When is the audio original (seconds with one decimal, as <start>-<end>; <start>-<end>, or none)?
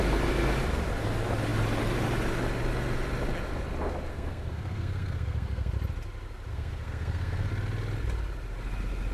0.0-4.1; 5.7-6.5; 7.5-9.1